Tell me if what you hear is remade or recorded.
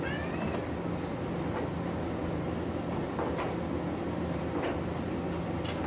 recorded